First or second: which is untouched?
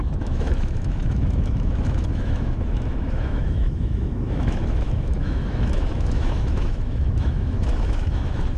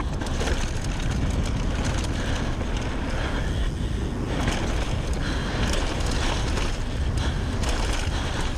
second